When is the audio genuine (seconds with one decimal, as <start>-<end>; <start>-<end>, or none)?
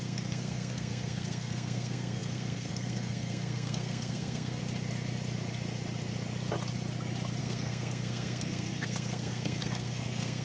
4.6-7.4